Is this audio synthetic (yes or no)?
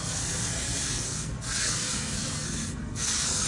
yes